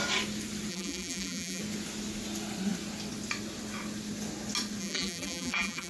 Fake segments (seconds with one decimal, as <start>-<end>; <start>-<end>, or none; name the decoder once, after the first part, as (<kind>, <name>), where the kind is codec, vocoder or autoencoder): 0.7-1.6 (vocoder, BigVGAN v2); 4.8-5.9